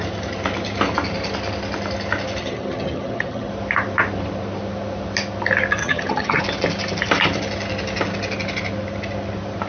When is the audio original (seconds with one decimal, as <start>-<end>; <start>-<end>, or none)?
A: 0.0-2.4; 3.5-5.8; 6.4-9.7